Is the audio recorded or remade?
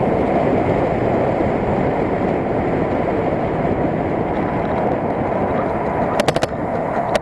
recorded